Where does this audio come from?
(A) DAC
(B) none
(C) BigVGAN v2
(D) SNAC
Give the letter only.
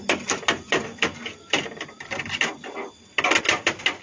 B